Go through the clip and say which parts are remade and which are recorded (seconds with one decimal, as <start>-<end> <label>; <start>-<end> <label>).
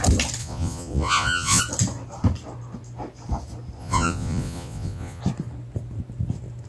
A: 0.0-0.4 recorded; 0.4-1.6 remade; 1.6-3.8 recorded; 3.8-5.2 remade; 5.2-6.7 recorded